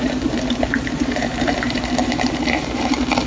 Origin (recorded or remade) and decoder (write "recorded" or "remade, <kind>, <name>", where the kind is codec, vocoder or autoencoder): remade, vocoder, BigVGAN v2